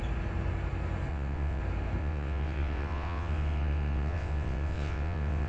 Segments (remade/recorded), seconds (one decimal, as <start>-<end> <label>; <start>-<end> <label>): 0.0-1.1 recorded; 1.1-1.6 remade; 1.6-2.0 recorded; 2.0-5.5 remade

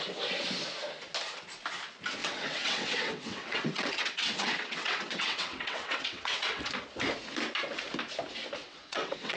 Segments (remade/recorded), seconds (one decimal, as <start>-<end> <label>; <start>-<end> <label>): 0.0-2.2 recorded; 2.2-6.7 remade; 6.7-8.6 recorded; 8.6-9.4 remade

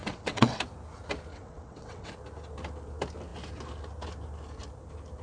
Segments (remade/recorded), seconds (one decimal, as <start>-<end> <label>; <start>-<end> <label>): 0.0-0.6 remade; 0.6-1.3 recorded; 1.3-2.1 remade; 2.1-5.2 recorded